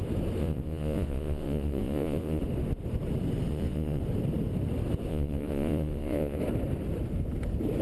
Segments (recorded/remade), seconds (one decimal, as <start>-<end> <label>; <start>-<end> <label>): 0.0-0.4 recorded; 0.4-2.4 remade; 2.4-3.5 recorded; 3.5-4.0 remade; 4.0-5.1 recorded; 5.1-6.4 remade; 6.4-7.8 recorded